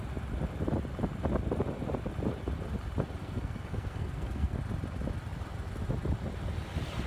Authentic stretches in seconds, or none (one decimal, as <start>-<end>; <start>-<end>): 0.0-3.2; 4.6-7.1